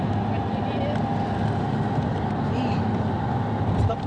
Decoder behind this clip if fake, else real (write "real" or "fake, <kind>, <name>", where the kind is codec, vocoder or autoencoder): real